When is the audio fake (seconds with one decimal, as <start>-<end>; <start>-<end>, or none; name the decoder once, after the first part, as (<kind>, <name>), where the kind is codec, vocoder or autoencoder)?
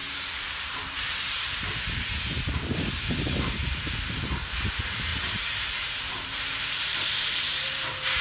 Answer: 0.0-8.2 (vocoder, BigVGAN v2)